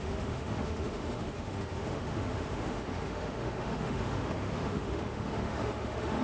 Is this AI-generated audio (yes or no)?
yes